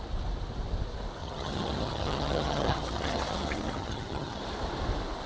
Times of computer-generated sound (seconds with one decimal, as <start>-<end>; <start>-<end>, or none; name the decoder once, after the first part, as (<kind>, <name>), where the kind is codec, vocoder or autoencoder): 1.2-4.4 (vocoder, HiFi-GAN)